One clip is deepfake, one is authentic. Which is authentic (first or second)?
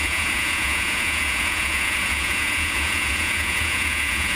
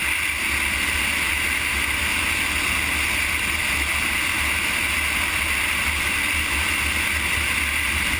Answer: second